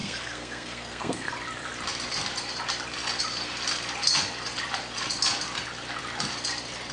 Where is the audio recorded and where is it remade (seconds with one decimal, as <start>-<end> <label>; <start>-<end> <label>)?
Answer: 0.0-1.3 remade; 1.3-6.9 recorded